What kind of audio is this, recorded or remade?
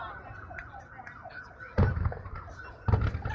recorded